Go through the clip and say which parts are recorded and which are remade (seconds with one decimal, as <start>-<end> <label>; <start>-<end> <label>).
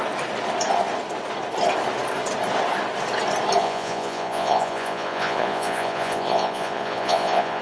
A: 0.0-3.6 recorded; 3.6-7.6 remade